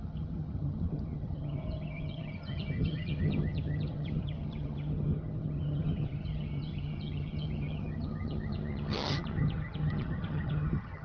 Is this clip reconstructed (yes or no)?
yes